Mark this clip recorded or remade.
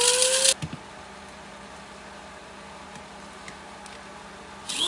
recorded